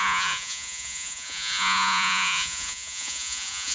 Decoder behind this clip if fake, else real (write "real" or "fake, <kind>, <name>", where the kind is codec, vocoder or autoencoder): fake, vocoder, Vocos